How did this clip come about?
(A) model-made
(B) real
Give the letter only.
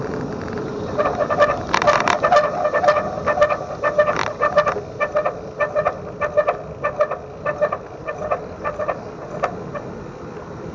B